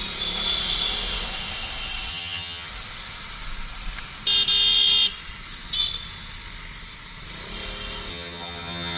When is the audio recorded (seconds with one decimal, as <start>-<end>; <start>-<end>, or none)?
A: 0.0-2.1; 2.7-8.1